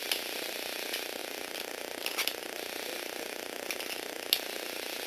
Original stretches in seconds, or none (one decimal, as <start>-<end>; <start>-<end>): 0.0-5.1